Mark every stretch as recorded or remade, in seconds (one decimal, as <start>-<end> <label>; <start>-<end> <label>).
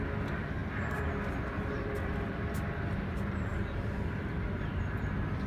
0.0-5.5 recorded